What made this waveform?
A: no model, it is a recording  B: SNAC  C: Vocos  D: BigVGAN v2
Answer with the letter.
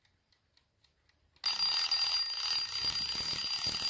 A